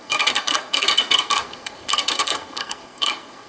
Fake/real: fake